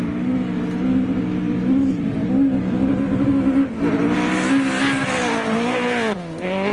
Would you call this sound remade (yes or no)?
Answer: no